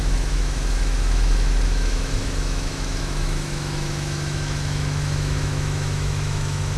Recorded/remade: remade